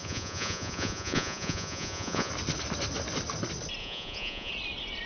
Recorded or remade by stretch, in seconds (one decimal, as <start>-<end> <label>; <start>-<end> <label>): 0.0-2.3 remade; 2.3-3.8 recorded; 3.8-4.5 remade; 4.5-5.1 recorded